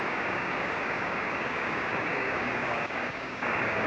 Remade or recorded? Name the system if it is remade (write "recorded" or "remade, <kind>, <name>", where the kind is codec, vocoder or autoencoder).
remade, codec, DAC